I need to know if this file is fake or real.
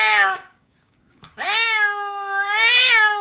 fake